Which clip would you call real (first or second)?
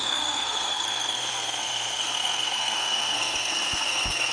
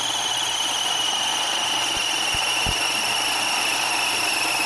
second